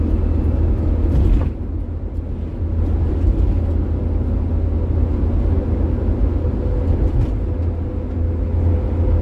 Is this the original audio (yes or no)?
yes